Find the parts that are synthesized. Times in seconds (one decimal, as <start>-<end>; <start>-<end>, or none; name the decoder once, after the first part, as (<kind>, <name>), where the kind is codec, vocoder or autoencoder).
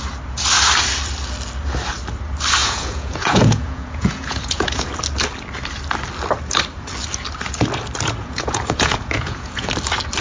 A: 2.6-4.9 (vocoder, Vocos); 8.2-9.7